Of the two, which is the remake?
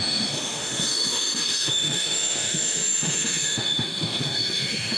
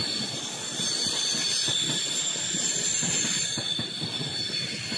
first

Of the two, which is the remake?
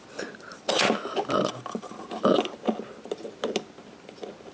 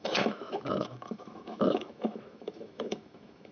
second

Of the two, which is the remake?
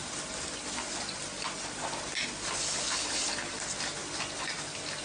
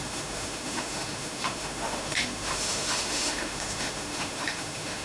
second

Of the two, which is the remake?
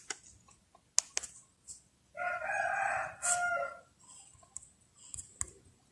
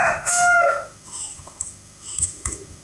second